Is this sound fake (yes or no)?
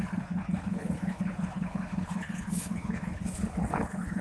yes